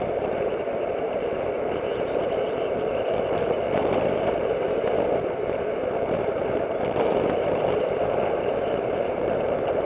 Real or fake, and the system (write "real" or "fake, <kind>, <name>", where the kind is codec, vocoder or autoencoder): fake, vocoder, BigVGAN v2